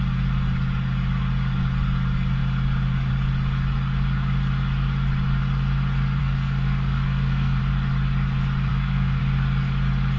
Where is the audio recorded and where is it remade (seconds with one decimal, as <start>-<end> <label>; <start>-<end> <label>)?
0.0-6.2 recorded; 6.2-7.6 remade; 7.6-8.7 recorded; 8.7-9.2 remade; 9.2-10.2 recorded